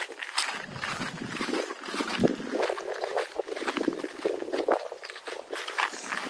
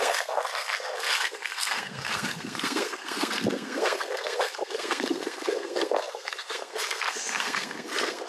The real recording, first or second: first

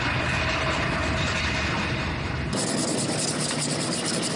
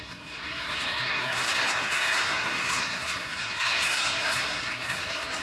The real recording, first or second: first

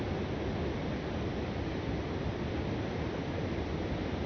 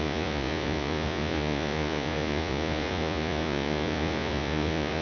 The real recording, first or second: first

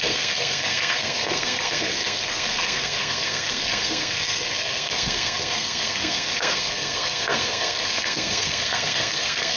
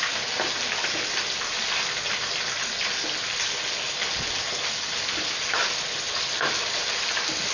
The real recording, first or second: second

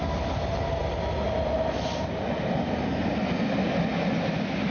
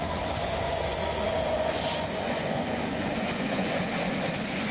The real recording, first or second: first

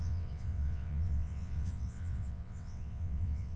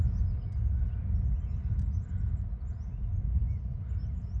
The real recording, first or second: second